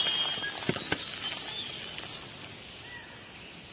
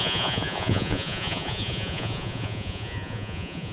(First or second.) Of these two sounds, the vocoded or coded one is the second